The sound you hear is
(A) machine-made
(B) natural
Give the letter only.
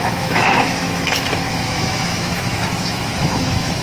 A